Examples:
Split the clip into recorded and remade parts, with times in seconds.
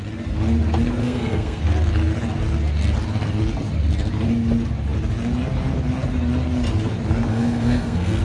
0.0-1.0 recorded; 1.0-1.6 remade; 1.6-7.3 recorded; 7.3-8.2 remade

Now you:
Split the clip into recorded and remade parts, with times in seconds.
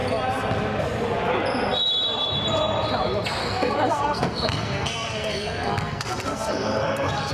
0.0-3.4 recorded; 3.4-7.3 remade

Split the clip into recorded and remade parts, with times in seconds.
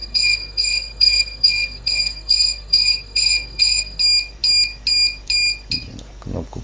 0.0-4.0 remade; 4.0-6.6 recorded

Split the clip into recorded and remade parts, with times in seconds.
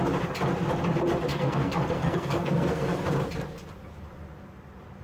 0.0-1.3 recorded; 1.3-3.0 remade; 3.0-5.0 recorded